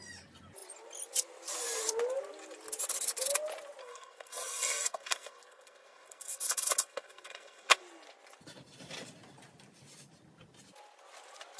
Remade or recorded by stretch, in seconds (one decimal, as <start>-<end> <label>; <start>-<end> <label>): 0.0-3.8 recorded; 3.8-7.8 remade; 7.8-11.6 recorded